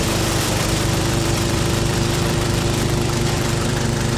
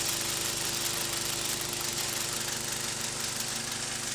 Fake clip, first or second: first